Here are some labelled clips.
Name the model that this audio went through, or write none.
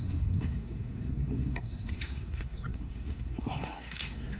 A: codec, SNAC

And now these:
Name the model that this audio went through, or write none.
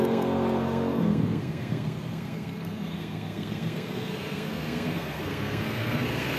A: codec, SNAC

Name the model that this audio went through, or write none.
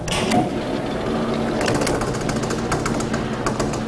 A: none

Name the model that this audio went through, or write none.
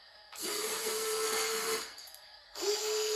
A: codec, SNAC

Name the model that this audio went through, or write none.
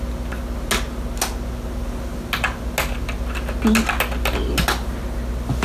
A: none